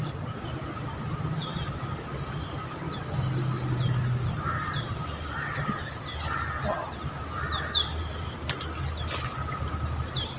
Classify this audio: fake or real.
real